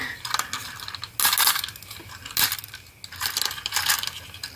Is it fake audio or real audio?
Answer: real